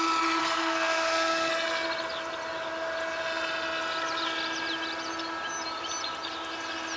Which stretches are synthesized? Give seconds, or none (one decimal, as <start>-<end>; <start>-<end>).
0.4-1.5

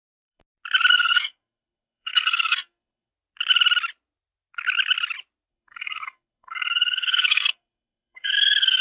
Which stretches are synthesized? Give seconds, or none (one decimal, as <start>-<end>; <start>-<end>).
0.0-0.4; 0.9-3.1; 5.5-8.8

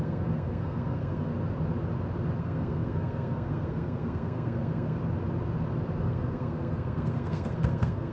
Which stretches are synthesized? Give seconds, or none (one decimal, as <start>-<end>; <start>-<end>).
0.0-1.3; 2.4-5.0; 6.0-8.1

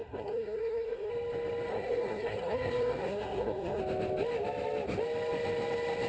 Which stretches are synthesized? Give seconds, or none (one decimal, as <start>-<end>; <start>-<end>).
0.0-1.1; 1.7-3.8

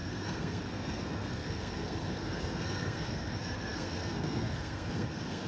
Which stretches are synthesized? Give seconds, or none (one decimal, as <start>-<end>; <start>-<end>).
0.0-5.5

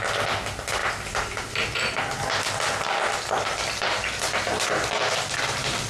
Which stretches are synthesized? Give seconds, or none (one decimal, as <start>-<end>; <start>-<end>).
none

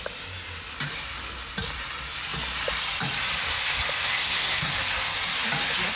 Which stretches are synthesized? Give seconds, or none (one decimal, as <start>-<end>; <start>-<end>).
4.1-4.7

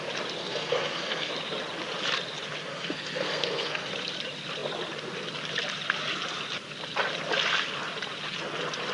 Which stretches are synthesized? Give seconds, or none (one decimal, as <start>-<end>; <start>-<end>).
0.4-1.3; 2.7-3.9